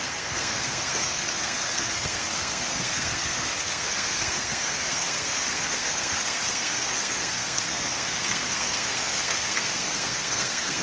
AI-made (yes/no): yes